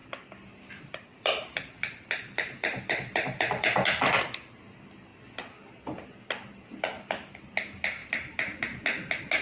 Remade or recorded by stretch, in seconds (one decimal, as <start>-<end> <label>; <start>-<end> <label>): 0.0-4.2 remade; 4.2-5.1 recorded; 5.1-7.3 remade; 7.3-8.0 recorded; 8.0-8.6 remade; 8.6-9.4 recorded